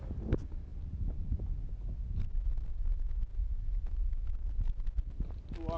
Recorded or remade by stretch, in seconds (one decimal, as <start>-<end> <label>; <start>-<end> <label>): 0.0-5.8 recorded